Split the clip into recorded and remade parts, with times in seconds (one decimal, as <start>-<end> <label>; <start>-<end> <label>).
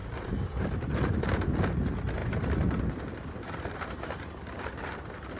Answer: 0.0-1.2 remade; 1.2-2.2 recorded; 2.2-5.4 remade